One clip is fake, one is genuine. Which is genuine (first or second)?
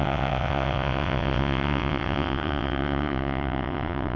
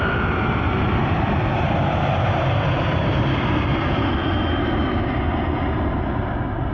second